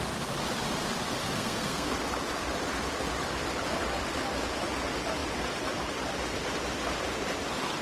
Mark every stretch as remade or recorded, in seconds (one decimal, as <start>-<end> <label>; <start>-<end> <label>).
0.0-1.2 recorded; 1.2-1.9 remade; 1.9-7.8 recorded